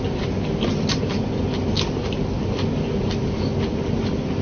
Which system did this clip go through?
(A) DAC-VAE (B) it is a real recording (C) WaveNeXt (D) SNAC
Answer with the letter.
B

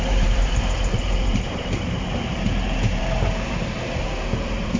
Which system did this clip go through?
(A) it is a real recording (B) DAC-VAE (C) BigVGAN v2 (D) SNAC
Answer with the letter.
C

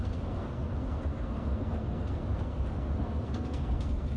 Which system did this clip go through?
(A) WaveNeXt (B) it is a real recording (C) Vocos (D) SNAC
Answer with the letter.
D